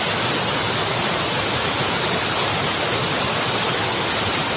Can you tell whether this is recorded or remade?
recorded